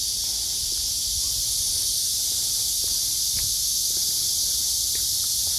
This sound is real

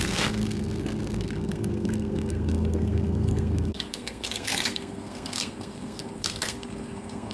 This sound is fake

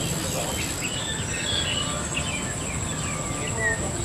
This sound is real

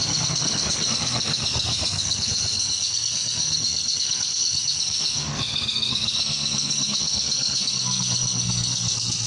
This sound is fake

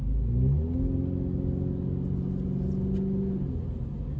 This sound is real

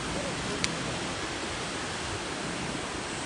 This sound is real